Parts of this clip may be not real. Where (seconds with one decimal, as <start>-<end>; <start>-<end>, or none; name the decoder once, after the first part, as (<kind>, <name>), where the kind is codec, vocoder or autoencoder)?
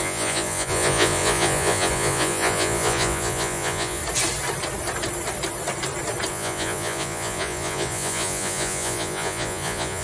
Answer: 0.0-4.0 (vocoder, Vocos); 6.3-10.0